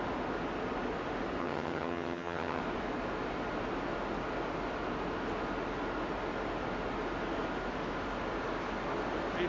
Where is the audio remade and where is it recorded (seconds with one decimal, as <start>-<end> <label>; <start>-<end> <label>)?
0.0-1.4 recorded; 1.4-2.6 remade; 2.6-9.5 recorded